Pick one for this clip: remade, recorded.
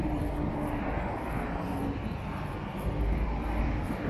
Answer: recorded